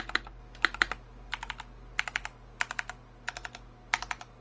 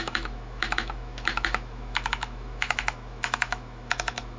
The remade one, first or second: second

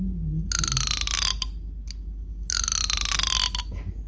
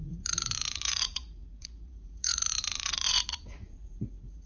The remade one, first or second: second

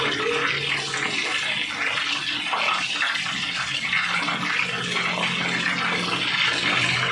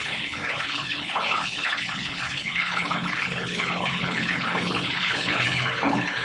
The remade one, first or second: second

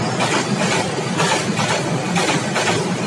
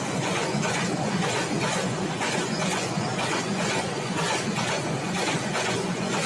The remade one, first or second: second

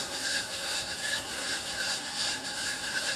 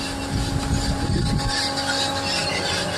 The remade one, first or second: first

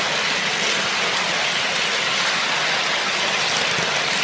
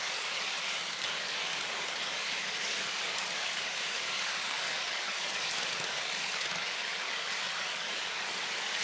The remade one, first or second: second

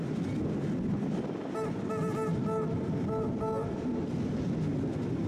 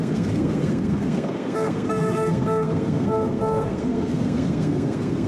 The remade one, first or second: second